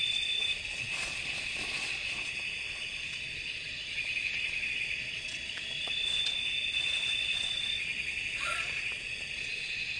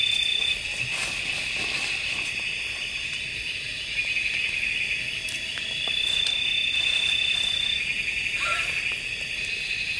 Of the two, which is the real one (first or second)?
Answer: second